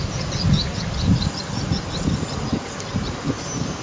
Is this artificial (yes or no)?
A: no